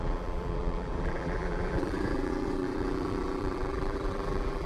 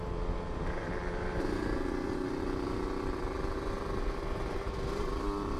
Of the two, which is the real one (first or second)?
second